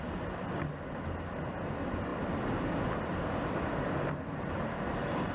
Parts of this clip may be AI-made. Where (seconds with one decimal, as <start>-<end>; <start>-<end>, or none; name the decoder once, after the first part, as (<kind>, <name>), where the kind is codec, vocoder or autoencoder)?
2.1-3.8 (vocoder, BigVGAN v2)